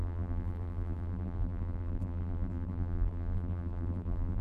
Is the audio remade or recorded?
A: remade